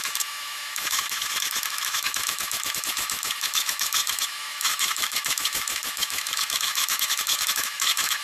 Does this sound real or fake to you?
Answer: fake